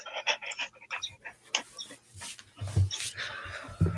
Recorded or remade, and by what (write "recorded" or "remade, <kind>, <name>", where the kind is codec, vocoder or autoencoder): recorded